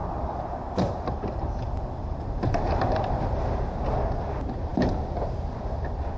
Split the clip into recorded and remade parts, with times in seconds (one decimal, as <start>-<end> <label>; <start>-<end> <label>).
0.0-3.7 remade; 3.7-6.2 recorded